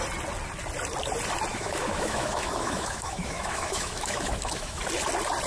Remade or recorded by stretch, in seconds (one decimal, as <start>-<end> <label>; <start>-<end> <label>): 0.0-1.5 recorded; 1.5-4.8 remade; 4.8-5.5 recorded